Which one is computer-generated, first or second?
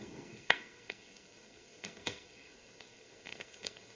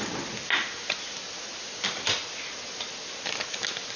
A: first